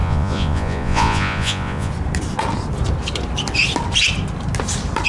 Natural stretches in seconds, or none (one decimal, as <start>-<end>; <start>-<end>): 1.9-5.1